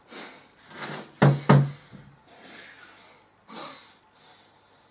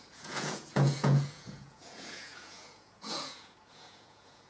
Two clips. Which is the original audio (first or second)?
first